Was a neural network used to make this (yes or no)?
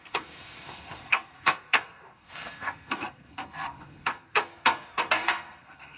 yes